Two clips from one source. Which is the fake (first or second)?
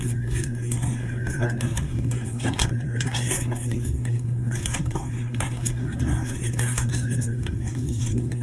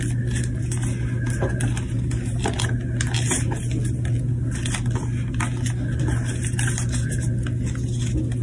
first